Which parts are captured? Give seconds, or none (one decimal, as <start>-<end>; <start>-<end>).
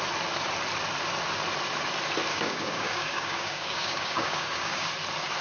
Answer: 0.0-2.3; 4.9-5.4